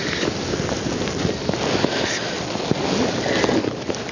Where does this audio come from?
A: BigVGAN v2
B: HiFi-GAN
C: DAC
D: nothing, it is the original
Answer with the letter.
D